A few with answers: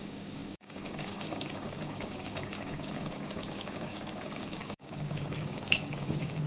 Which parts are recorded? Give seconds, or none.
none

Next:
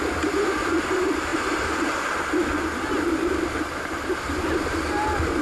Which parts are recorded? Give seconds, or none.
0.0-5.4